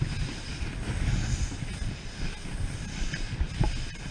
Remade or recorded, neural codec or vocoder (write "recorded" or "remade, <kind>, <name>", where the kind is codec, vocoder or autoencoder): recorded